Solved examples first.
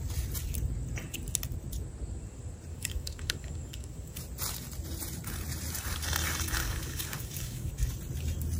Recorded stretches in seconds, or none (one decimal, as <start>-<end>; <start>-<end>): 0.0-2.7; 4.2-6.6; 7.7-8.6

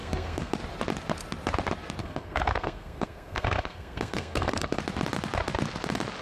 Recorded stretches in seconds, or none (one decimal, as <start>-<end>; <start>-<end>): 0.5-2.0; 4.8-6.2

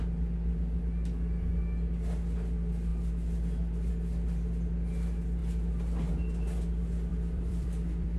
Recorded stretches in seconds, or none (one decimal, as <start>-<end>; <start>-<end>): 0.0-7.1